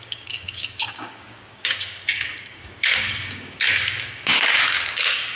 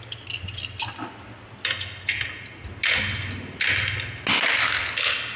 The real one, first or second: second